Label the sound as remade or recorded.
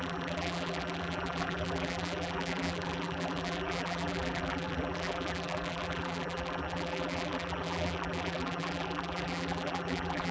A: remade